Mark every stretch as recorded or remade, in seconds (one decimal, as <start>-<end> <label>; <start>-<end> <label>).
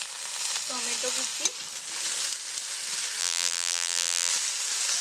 0.0-3.2 recorded; 3.2-4.3 remade; 4.3-5.0 recorded